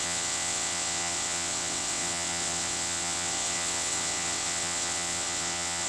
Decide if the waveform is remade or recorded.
remade